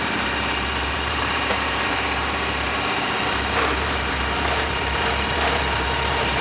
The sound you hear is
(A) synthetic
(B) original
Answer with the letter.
A